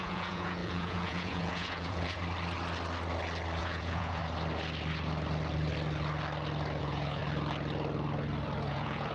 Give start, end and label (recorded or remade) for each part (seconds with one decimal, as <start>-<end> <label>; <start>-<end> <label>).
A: 0.0-2.2 remade; 2.2-3.6 recorded; 3.6-4.2 remade; 4.2-6.8 recorded; 6.8-7.2 remade; 7.2-8.7 recorded; 8.7-9.1 remade